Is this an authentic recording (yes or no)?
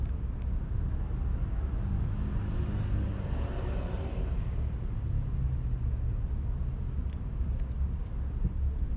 yes